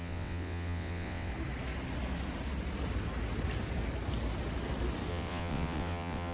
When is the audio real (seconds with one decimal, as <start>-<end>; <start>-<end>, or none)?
1.3-5.1

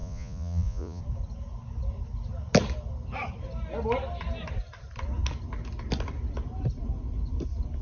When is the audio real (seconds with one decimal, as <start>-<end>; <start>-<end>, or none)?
1.0-7.8

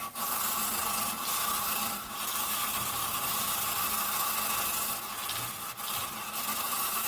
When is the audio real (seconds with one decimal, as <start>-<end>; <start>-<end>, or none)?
0.8-1.5; 3.0-5.8

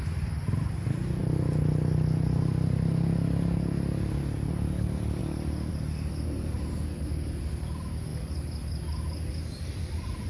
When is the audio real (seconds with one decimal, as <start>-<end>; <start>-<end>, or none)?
0.0-10.3

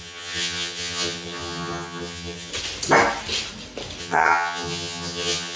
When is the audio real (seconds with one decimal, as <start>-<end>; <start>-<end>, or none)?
2.5-4.0

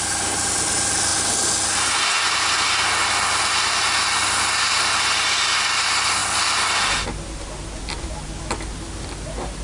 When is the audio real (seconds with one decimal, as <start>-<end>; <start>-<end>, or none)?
0.0-9.6

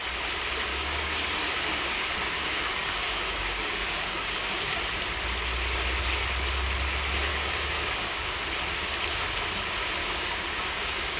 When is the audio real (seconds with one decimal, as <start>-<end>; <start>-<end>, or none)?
0.0-0.7; 4.8-7.3; 8.4-10.0

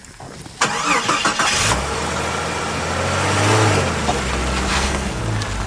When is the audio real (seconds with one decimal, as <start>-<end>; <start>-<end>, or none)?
0.0-4.7; 5.2-5.7